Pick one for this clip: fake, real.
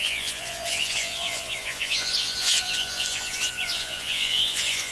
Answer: fake